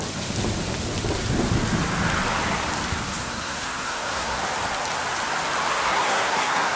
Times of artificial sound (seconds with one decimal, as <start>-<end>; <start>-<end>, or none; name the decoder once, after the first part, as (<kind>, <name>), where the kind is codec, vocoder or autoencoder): 3.2-4.4 (codec, SNAC); 5.7-6.8